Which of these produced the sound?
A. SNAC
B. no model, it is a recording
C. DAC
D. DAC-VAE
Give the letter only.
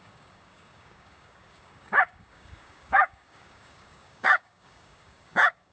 C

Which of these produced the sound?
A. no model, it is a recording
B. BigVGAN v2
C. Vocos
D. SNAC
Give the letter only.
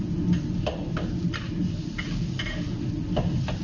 A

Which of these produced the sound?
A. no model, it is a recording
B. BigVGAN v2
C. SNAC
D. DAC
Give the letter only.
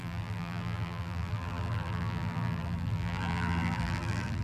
B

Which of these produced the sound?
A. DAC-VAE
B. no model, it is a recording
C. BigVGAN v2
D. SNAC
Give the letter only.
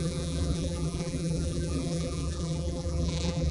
C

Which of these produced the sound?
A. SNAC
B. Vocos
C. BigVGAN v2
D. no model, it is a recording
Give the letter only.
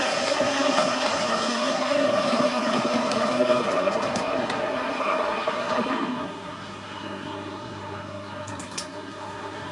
A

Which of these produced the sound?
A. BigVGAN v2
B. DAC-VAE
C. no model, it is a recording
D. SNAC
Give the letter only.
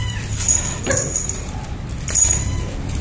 C